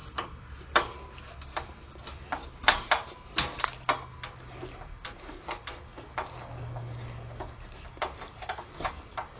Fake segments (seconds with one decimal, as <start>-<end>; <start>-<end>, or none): none